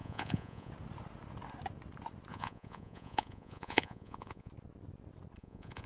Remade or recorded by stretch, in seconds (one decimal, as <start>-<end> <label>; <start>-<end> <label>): 0.0-0.7 remade; 0.7-2.3 recorded; 2.3-4.5 remade; 4.5-5.4 recorded; 5.4-5.9 remade